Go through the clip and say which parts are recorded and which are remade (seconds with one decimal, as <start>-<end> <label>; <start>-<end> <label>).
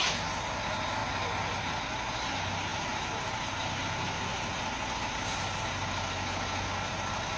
0.0-7.4 recorded